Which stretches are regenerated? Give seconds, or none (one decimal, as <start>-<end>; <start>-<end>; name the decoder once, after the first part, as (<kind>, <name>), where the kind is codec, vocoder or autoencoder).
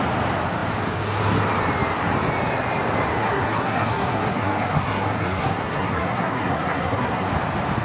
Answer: 3.2-7.3 (codec, SNAC)